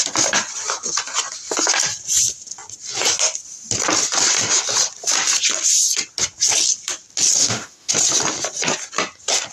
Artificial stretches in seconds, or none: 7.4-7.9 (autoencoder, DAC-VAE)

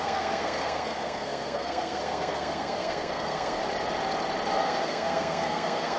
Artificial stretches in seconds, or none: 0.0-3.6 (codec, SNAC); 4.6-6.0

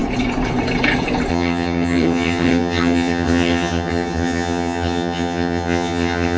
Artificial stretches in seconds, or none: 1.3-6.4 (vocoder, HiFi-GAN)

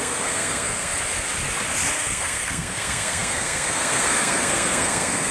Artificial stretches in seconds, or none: 0.0-0.9 (codec, SNAC); 1.9-5.3

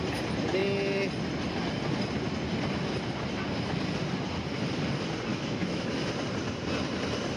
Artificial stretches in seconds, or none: 5.3-6.1 (autoencoder, DAC-VAE)